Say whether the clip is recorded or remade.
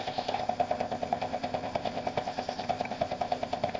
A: remade